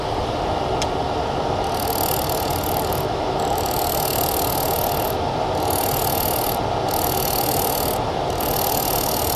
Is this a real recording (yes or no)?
yes